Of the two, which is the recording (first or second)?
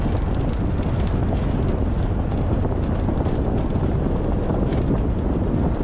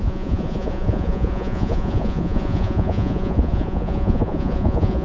first